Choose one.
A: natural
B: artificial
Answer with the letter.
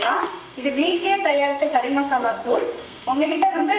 B